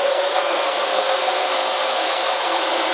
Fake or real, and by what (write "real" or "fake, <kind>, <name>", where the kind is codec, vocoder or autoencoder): fake, codec, SNAC